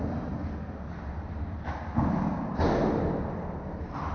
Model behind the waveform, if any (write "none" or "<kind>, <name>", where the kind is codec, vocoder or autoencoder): none